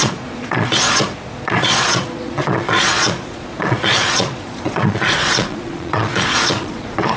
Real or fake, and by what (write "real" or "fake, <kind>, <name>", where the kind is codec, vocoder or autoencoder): fake, vocoder, Vocos